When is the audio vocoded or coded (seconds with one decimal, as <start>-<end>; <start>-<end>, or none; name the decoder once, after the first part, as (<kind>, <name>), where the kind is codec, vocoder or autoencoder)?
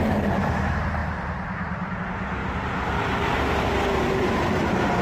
0.0-2.4 (vocoder, BigVGAN v2); 4.2-5.0